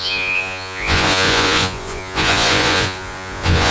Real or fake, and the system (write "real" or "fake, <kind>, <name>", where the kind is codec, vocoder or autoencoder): fake, vocoder, Vocos